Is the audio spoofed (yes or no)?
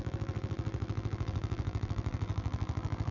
yes